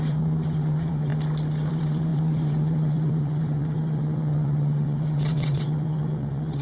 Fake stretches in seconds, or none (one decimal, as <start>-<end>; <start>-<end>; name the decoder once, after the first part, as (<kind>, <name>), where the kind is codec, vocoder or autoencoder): 0.0-1.1 (vocoder, WaveNeXt); 1.7-6.6